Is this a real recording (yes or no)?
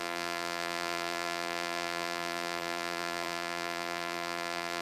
no